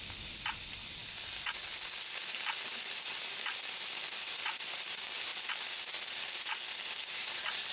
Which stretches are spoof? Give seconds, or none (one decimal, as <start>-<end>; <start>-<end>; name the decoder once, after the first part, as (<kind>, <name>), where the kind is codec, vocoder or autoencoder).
0.0-1.0 (vocoder, BigVGAN v2); 3.1-5.3; 6.9-7.7